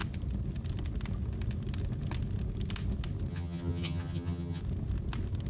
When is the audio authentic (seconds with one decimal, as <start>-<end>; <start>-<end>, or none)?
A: 0.0-3.3; 4.6-5.5